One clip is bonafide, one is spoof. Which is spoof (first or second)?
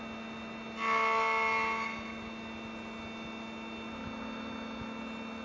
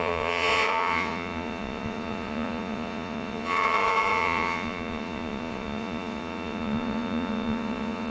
second